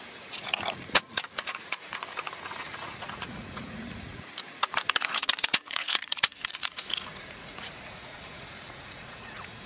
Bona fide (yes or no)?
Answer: no